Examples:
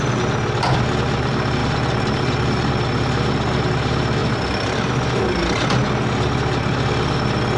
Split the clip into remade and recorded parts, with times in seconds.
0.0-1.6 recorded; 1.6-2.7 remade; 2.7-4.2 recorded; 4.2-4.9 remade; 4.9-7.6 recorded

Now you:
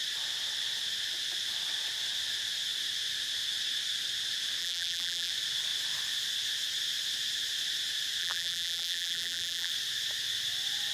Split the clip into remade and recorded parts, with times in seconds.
0.0-4.6 recorded; 4.6-5.3 remade; 5.3-8.2 recorded; 8.2-9.7 remade; 9.7-10.9 recorded

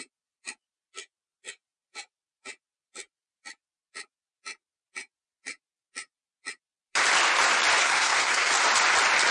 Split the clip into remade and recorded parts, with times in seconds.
0.0-7.8 recorded; 7.8-8.5 remade; 8.5-9.3 recorded

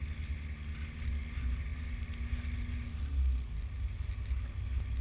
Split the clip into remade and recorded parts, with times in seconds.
0.0-5.0 recorded

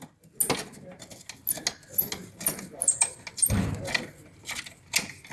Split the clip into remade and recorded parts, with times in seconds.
0.0-5.3 recorded

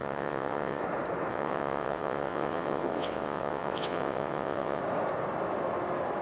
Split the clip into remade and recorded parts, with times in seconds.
0.0-0.8 remade; 0.8-1.3 recorded; 1.3-4.8 remade; 4.8-6.2 recorded

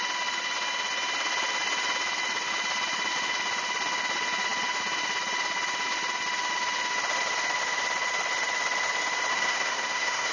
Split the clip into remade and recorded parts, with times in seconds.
0.0-9.3 recorded; 9.3-10.3 remade

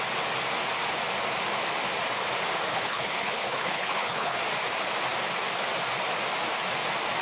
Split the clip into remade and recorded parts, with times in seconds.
0.0-2.7 recorded; 2.7-4.4 remade; 4.4-7.2 recorded